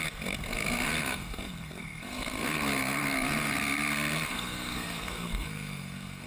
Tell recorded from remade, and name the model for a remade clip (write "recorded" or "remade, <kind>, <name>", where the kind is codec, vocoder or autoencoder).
remade, codec, SNAC